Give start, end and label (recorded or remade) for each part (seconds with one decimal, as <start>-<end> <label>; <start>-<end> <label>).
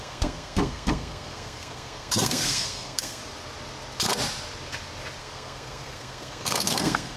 0.0-3.2 remade; 3.2-5.2 recorded; 5.2-7.2 remade